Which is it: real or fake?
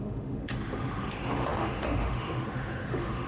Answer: fake